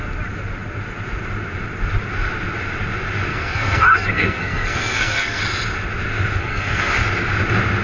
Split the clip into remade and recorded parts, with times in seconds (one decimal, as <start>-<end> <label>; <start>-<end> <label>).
0.0-3.3 recorded; 3.3-5.4 remade; 5.4-6.4 recorded; 6.4-7.0 remade; 7.0-7.8 recorded